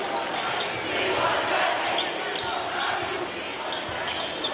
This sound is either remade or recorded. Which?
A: recorded